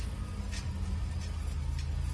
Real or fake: real